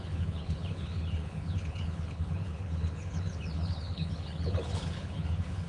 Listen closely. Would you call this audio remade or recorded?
remade